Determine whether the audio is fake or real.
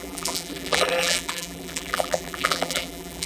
fake